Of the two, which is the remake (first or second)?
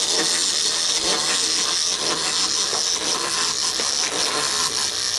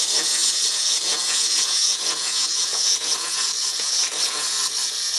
second